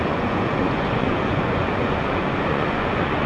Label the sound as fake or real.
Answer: fake